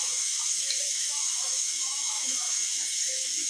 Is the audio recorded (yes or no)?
no